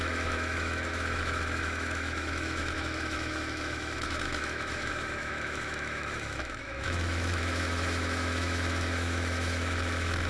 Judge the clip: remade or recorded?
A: remade